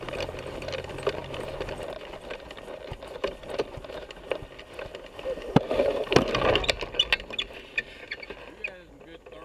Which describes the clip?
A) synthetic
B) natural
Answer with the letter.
B